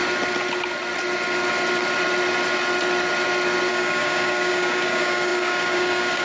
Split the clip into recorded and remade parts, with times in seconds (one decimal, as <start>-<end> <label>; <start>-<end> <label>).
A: 0.0-3.7 recorded; 3.7-6.2 remade